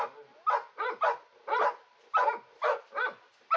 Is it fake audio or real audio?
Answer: real